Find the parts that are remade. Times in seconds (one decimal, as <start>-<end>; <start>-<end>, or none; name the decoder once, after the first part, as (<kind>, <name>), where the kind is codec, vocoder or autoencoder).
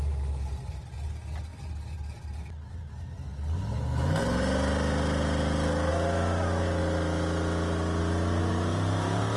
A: 8.4-9.4 (vocoder, BigVGAN v2)